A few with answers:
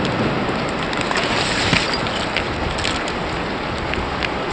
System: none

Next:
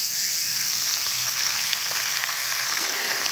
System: codec, SNAC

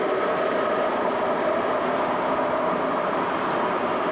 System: none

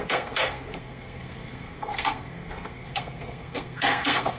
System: codec, SNAC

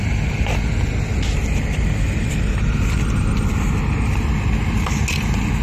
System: none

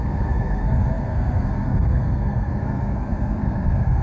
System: codec, SNAC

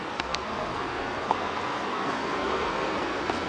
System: codec, SNAC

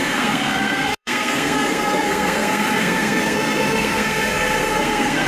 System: codec, SNAC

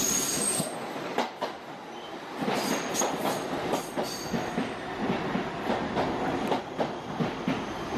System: none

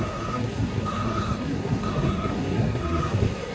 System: codec, SNAC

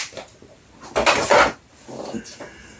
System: none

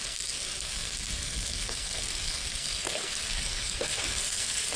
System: codec, SNAC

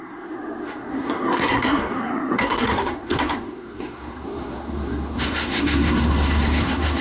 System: codec, SNAC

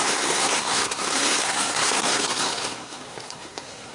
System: codec, SNAC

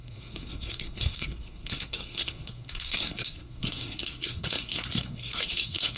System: codec, SNAC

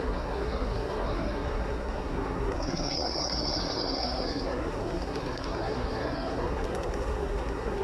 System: codec, SNAC